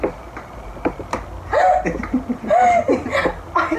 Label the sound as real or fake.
real